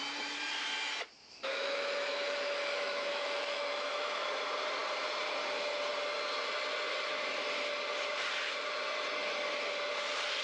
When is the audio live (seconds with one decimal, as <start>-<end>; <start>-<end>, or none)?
0.0-1.2; 4.3-10.4